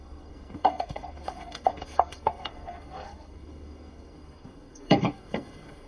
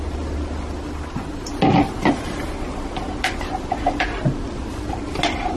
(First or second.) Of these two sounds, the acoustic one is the second